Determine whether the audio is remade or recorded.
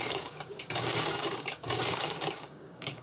remade